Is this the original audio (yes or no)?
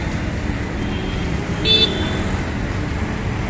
yes